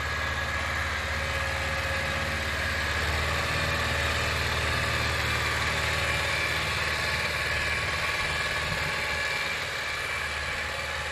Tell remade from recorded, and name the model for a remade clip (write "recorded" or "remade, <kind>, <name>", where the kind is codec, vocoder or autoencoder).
recorded